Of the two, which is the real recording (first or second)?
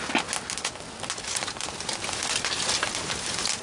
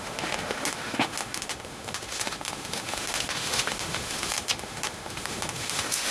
first